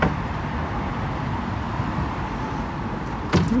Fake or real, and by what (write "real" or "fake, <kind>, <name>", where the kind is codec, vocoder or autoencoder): real